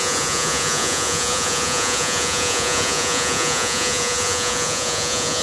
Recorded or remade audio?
remade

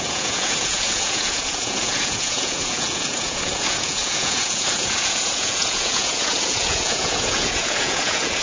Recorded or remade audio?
remade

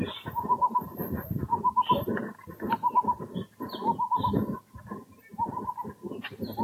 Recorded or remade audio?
recorded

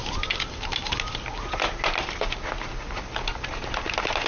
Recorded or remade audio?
recorded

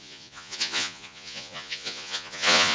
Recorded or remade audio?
remade